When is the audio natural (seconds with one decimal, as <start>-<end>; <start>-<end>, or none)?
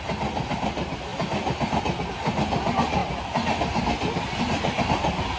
0.0-5.4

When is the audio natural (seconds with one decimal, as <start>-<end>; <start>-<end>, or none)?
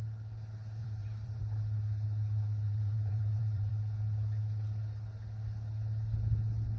0.0-0.8; 1.4-2.7; 3.7-6.8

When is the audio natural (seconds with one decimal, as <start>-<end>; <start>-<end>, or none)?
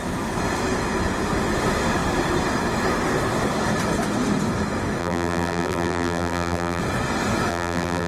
0.0-5.0; 6.8-7.5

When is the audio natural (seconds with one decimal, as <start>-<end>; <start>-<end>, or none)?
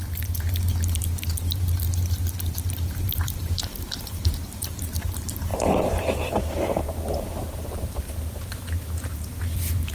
none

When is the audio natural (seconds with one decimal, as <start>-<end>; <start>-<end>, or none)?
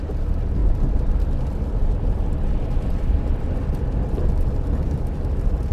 0.0-0.6; 3.7-5.7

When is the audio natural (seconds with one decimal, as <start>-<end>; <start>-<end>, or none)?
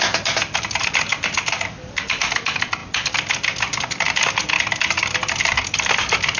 0.0-6.4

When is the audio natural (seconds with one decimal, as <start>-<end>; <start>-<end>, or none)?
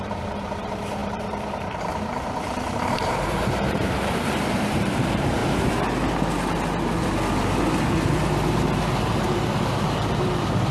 5.4-8.9